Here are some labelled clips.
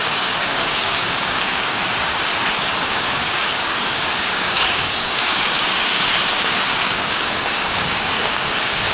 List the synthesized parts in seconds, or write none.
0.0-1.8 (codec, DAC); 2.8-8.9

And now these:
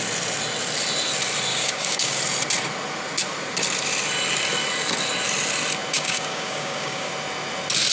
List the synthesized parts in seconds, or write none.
1.5-2.2 (codec, DAC); 5.9-7.1

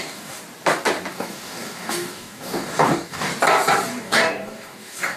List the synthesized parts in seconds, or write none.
0.0-0.4 (codec, DAC); 1.1-3.3; 4.0-5.2